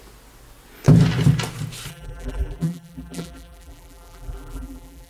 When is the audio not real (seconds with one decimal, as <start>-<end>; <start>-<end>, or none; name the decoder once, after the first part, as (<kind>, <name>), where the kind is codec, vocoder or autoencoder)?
1.9-5.1 (vocoder, BigVGAN v2)

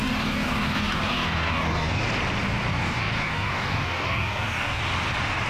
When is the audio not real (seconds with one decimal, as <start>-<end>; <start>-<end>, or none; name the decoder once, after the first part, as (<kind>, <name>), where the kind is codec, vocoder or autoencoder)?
0.0-2.0 (codec, DAC); 2.7-4.8

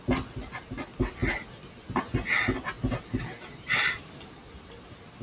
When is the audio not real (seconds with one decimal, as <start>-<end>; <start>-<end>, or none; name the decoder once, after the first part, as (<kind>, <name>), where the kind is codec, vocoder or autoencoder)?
none

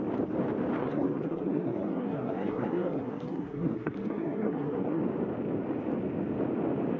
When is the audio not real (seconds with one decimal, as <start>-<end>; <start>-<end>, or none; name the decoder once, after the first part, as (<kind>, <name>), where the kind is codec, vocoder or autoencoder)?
0.8-5.0 (codec, SNAC)

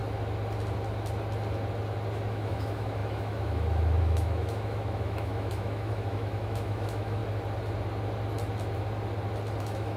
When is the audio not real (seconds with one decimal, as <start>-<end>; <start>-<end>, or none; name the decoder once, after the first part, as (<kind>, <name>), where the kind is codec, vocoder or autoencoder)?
2.3-7.2 (autoencoder, DAC-VAE); 9.6-10.0

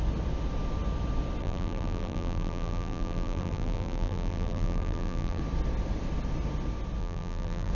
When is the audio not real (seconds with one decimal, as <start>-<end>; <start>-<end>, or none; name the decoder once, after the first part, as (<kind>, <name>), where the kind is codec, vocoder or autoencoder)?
1.4-5.4 (vocoder, BigVGAN v2); 7.0-7.7

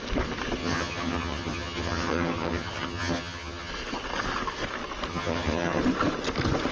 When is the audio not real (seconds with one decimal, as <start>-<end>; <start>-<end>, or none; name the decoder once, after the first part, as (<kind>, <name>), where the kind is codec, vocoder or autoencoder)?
0.6-3.7 (vocoder, HiFi-GAN); 5.1-5.8

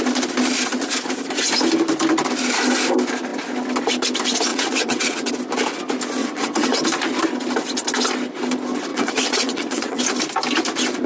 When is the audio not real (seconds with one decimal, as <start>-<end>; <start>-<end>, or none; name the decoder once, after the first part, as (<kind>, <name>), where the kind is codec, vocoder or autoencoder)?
4.5-5.3 (vocoder, WaveNeXt); 6.2-6.8; 8.9-10.0